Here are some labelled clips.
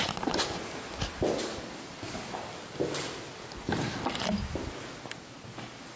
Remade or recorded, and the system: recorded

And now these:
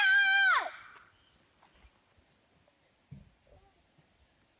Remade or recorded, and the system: recorded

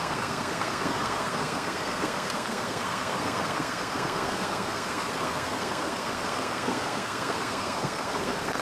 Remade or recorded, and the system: remade, codec, SNAC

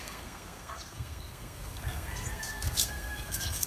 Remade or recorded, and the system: remade, codec, SNAC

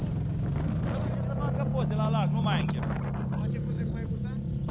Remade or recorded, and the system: recorded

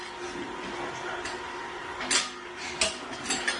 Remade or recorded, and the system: recorded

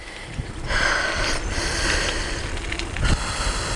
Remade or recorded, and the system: recorded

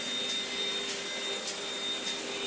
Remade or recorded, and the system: recorded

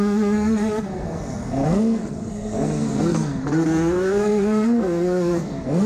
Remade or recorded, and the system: remade, codec, SNAC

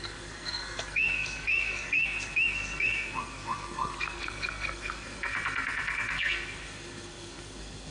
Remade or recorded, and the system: remade, codec, SNAC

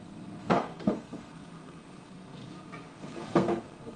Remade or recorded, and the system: remade, codec, SNAC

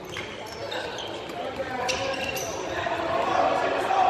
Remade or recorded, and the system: recorded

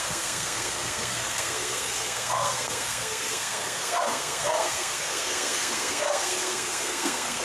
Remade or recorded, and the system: remade, codec, SNAC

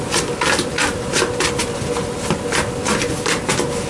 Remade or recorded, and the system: recorded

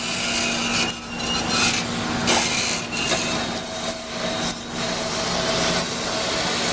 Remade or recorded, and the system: recorded